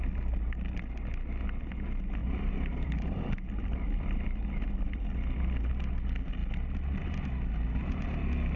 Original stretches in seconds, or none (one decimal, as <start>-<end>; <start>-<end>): 0.0-2.2; 5.1-8.6

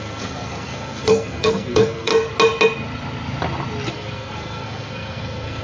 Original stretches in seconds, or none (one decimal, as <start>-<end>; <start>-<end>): 2.1-3.9

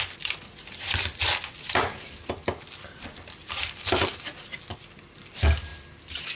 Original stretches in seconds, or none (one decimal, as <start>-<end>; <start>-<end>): 0.0-6.4

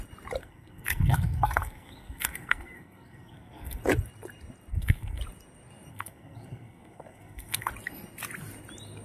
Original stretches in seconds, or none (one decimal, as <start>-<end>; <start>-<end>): 0.0-0.4; 3.8-4.7; 5.2-5.9; 7.7-9.0

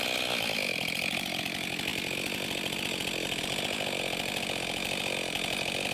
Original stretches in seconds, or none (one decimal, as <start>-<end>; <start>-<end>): 0.0-5.9

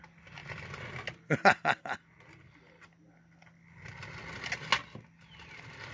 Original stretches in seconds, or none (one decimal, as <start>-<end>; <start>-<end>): 0.0-5.9

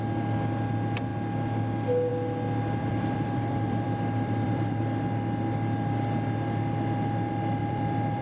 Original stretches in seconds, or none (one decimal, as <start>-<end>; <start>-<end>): 0.0-2.8; 4.8-7.6